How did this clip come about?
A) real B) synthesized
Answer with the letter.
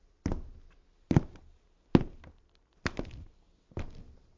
A